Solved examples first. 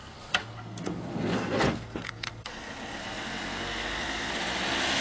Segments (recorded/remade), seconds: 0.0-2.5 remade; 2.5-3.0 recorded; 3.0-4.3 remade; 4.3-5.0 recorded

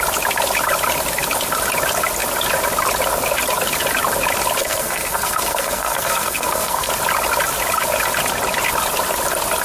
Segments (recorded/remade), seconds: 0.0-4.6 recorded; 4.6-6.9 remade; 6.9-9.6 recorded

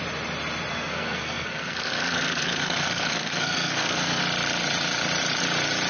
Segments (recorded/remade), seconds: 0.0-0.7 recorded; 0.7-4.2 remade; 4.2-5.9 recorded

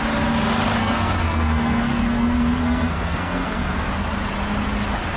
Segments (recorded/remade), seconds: 0.0-0.8 recorded; 0.8-3.9 remade; 3.9-5.2 recorded

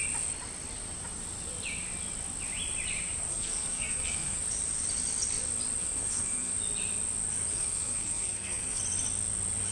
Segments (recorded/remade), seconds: 0.0-3.3 recorded; 3.3-4.4 remade; 4.4-5.8 recorded; 5.8-6.5 remade; 6.5-7.5 recorded; 7.5-8.8 remade; 8.8-9.7 recorded

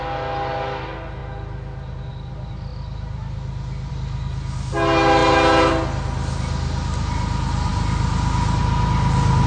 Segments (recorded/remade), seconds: 0.0-9.5 recorded